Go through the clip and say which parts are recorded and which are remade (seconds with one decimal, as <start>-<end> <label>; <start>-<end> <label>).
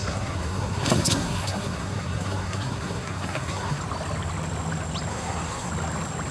0.0-3.8 remade; 3.8-5.1 recorded; 5.1-5.7 remade; 5.7-6.3 recorded